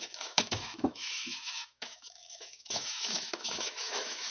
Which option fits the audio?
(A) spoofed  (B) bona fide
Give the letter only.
A